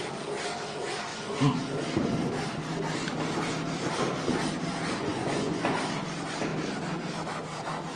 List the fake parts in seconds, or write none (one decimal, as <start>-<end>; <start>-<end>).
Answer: 1.1-1.6; 5.0-5.8